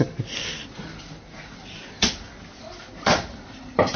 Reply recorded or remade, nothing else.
remade